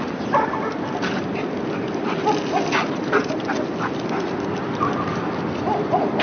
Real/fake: real